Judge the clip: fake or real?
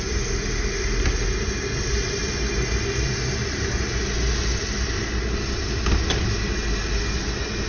real